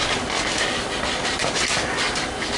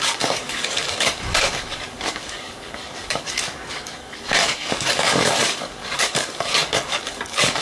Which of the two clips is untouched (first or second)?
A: first